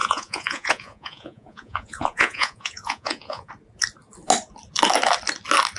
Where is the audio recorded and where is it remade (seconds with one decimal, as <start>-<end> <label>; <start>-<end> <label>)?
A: 0.0-3.5 remade; 3.5-5.8 recorded